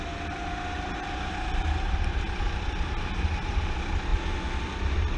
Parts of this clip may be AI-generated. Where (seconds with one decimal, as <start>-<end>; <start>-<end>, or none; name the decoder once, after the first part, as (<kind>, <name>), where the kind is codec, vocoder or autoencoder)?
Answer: none